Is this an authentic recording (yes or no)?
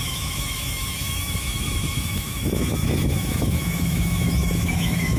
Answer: no